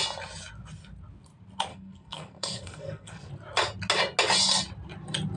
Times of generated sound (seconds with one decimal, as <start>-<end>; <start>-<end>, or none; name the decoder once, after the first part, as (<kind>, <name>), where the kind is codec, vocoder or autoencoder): 1.7-3.3 (codec, SNAC)